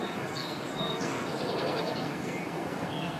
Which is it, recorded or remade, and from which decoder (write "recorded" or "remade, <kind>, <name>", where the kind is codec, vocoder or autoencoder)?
remade, codec, SNAC